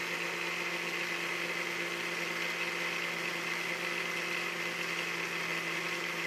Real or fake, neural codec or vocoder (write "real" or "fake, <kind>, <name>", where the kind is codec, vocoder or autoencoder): real